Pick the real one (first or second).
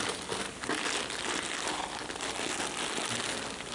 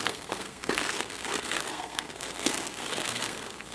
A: first